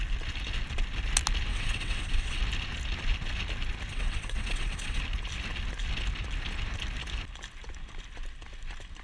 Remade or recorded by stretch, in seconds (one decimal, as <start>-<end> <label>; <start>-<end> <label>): 0.0-1.5 recorded; 1.5-2.4 remade; 2.4-3.9 recorded; 3.9-5.0 remade; 5.0-9.0 recorded